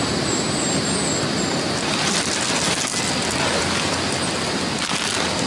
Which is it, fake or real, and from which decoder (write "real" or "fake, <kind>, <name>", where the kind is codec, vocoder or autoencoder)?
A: real